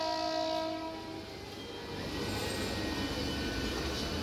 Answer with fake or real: real